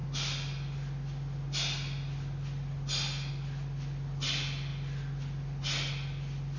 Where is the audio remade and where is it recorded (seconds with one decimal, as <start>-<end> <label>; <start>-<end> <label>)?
0.0-6.6 recorded